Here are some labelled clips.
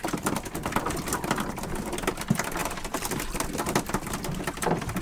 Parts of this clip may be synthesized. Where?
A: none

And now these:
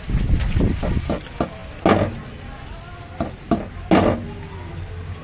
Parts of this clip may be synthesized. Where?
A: none

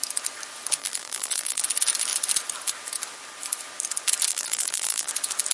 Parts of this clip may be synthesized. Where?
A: 0.8-1.6; 4.3-5.1